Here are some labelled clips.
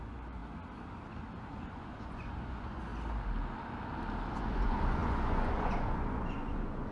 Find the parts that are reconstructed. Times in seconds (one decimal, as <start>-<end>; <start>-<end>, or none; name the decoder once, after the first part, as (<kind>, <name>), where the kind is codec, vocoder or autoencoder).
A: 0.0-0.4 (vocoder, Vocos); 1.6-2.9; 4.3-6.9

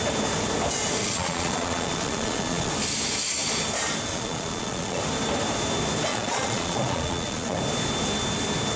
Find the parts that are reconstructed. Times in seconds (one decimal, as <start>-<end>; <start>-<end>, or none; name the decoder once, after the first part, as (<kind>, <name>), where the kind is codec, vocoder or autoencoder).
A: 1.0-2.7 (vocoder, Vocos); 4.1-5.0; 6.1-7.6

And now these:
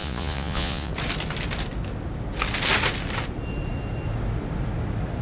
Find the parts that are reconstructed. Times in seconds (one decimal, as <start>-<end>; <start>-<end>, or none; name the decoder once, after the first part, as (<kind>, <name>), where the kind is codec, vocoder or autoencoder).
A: 0.0-0.9 (vocoder, Vocos)